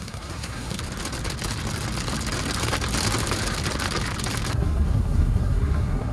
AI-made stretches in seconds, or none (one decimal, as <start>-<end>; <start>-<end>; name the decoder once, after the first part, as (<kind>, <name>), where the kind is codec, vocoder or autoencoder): 0.0-0.8 (codec, SNAC); 4.5-6.1